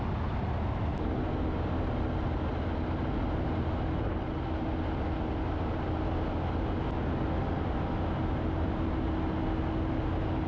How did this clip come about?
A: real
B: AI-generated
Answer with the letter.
A